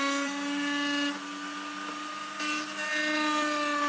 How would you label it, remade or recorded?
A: recorded